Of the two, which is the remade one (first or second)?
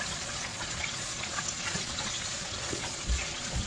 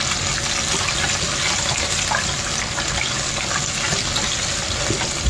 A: first